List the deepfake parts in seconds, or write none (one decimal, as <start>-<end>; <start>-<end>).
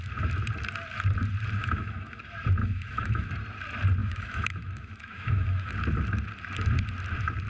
1.6-2.2; 2.6-3.3; 4.0-5.7